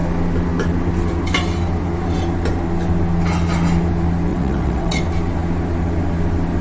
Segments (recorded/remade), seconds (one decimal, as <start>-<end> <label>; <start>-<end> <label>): 0.0-4.3 recorded; 4.3-5.0 remade; 5.0-6.6 recorded